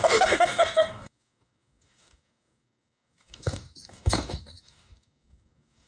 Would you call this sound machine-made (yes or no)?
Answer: yes